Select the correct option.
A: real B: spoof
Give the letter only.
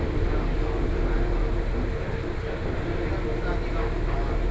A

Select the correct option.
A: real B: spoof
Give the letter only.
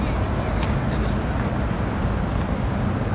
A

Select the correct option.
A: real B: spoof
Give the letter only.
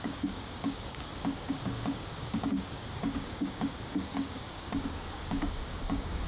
B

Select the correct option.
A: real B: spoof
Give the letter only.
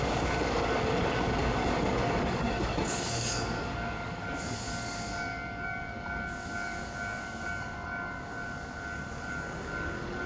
B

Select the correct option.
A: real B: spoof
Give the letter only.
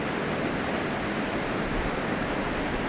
A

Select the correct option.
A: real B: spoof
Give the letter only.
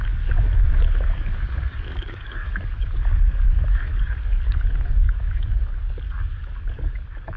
B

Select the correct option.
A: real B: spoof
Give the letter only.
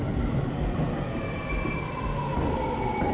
A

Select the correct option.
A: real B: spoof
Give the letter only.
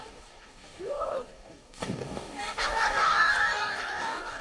B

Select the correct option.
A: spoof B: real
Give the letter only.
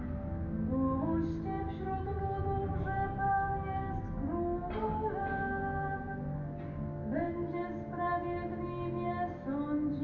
B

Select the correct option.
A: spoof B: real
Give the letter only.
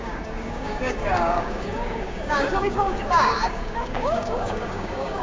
A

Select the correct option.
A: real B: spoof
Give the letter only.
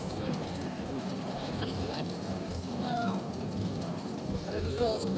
B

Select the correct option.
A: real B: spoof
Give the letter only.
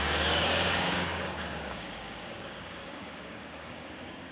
B